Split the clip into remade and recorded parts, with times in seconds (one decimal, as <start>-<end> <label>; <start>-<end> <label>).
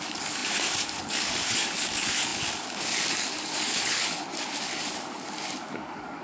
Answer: 0.0-6.2 remade